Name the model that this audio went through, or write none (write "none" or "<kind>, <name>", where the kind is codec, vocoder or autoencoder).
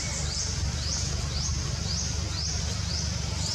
none